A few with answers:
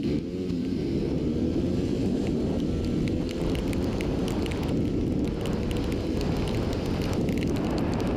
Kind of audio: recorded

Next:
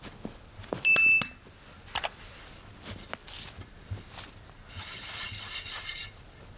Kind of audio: recorded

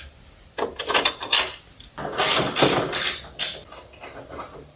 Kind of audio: recorded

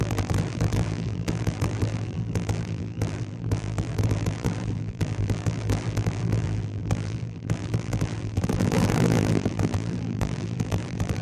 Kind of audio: remade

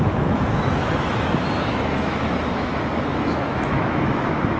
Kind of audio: remade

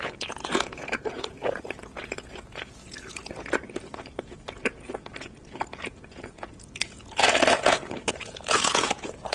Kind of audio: remade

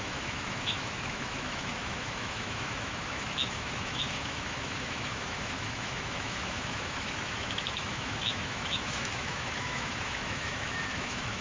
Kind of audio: remade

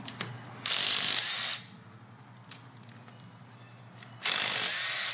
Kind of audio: recorded